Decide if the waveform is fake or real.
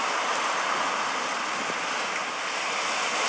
real